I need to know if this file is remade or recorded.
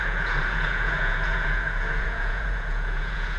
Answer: remade